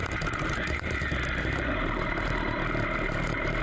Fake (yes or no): yes